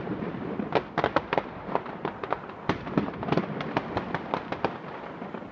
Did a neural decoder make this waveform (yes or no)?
yes